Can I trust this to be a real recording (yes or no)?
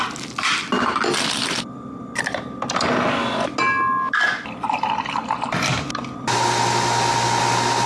yes